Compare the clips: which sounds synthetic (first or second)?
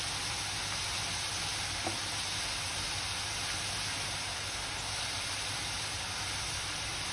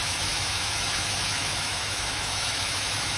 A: second